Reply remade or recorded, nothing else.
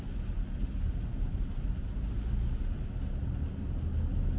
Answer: recorded